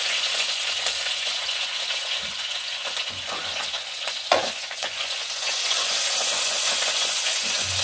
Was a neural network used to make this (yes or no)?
yes